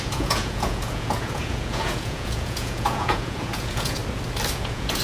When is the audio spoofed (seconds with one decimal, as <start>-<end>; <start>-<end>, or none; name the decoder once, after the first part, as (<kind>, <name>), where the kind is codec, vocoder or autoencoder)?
0.0-4.0 (vocoder, Vocos); 4.5-5.0